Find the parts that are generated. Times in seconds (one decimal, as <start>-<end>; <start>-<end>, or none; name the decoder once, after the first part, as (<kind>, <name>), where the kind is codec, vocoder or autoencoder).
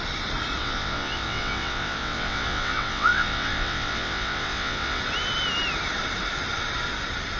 0.6-5.0 (vocoder, WaveNeXt)